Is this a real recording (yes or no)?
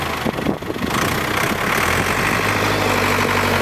yes